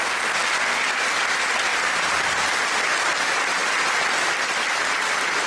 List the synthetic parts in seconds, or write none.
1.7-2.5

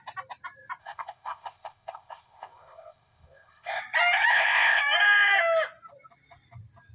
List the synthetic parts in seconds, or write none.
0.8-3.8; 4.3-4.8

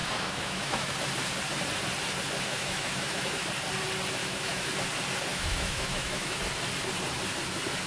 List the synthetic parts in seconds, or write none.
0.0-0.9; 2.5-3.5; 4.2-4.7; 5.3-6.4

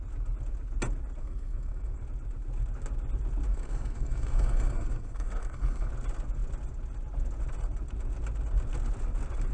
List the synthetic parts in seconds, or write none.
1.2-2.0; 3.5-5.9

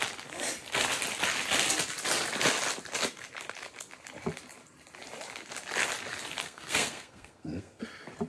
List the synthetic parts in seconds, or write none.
6.4-7.8